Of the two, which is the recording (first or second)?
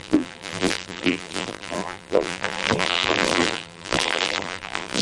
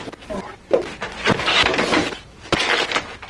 second